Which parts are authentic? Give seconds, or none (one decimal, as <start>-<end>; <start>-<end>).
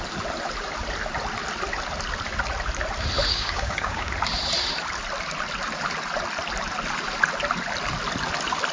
0.0-3.3; 4.1-8.7